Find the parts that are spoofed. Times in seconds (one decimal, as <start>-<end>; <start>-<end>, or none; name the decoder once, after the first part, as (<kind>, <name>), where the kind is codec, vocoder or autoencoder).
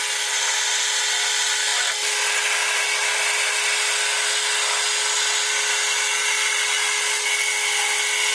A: none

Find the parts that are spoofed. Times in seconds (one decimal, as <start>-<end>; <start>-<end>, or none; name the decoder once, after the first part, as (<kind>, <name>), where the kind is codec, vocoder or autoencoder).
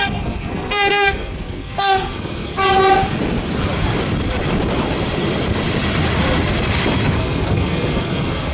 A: 0.0-2.5 (codec, SNAC); 7.1-8.5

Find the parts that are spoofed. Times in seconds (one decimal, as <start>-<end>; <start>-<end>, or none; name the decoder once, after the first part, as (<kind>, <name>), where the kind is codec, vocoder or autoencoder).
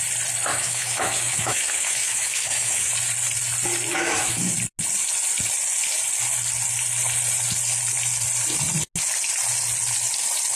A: 0.5-2.9 (autoencoder, DAC-VAE); 3.9-4.5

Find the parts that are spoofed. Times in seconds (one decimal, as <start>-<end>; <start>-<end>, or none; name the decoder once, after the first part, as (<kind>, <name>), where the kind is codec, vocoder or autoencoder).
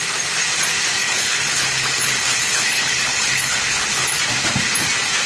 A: 1.0-4.2 (codec, HILCodec)